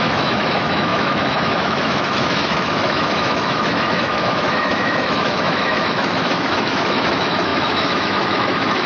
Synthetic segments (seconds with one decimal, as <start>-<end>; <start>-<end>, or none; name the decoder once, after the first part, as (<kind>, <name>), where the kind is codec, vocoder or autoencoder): 0.0-8.9 (autoencoder, DAC-VAE)